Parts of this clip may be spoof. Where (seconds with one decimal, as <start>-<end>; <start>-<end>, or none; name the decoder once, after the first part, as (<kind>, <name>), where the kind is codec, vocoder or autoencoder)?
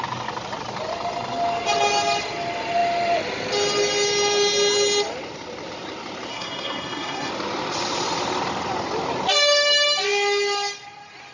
6.3-7.3 (codec, SNAC)